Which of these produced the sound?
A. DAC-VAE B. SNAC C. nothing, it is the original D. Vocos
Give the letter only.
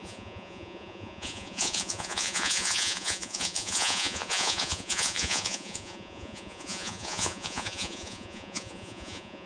D